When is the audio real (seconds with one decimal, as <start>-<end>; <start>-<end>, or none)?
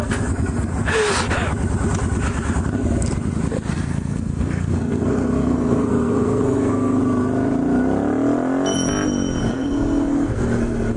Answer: 0.7-3.7; 7.0-9.4